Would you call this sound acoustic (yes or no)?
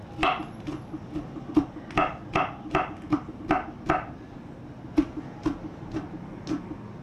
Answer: yes